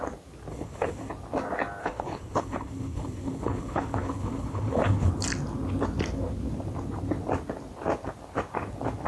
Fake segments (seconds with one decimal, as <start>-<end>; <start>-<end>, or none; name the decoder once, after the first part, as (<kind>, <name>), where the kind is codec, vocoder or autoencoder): 0.5-1.1 (codec, HILCodec); 1.8-5.1